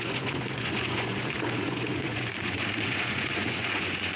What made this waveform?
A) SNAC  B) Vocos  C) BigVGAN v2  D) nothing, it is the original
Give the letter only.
B